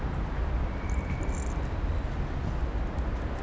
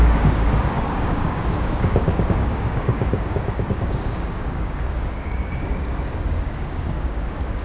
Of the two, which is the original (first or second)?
first